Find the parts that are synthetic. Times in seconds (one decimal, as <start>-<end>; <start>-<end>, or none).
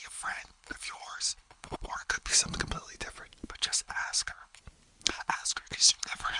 0.0-2.3; 3.5-4.6; 5.1-6.4